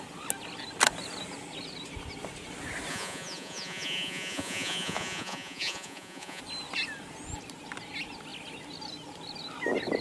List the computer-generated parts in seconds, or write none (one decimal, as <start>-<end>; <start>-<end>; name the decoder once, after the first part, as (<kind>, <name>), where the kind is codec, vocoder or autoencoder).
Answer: 2.9-6.4 (vocoder, Vocos)